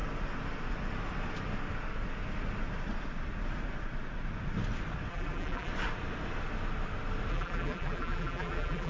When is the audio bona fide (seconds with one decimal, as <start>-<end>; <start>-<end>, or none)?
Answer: 0.0-5.1; 5.7-7.3